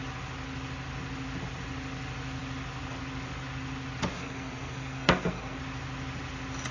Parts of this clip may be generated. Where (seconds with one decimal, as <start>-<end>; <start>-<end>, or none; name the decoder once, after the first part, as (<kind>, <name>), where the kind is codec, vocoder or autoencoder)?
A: 4.1-5.6 (codec, SNAC)